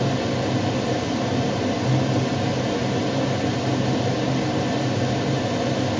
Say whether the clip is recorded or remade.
recorded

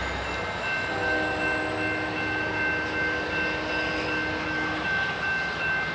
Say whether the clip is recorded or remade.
recorded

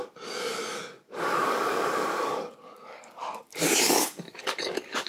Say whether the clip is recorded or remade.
remade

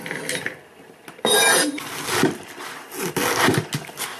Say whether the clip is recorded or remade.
recorded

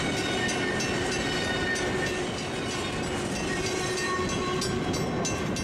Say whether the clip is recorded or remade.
recorded